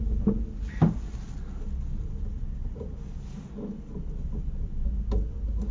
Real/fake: real